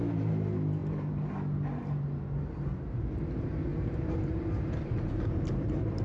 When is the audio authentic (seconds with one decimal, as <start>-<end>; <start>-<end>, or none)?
0.0-3.7